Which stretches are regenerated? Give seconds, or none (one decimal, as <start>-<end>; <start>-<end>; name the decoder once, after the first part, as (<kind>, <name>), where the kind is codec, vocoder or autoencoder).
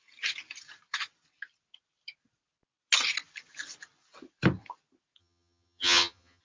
5.2-6.4 (vocoder, HiFi-GAN)